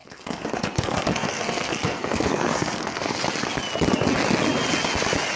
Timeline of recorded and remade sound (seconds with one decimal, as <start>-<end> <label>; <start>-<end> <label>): 0.0-3.2 remade; 3.2-5.4 recorded